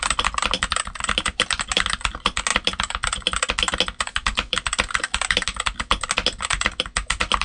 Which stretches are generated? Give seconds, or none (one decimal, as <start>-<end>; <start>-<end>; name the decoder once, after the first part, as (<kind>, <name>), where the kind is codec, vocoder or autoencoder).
none